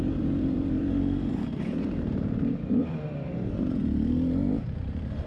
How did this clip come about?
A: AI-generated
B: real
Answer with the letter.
A